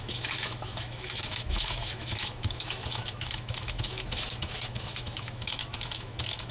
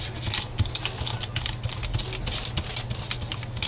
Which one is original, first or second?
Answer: second